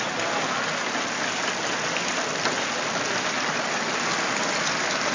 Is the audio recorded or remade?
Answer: recorded